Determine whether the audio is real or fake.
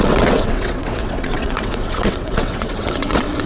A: fake